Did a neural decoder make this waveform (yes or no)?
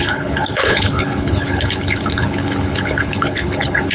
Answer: yes